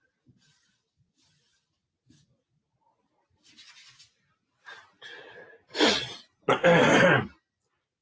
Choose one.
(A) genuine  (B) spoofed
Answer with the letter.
A